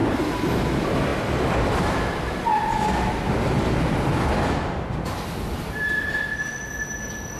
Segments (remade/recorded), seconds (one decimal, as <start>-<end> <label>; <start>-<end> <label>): 0.0-7.4 recorded